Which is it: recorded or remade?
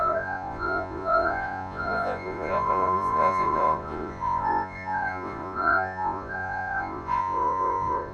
remade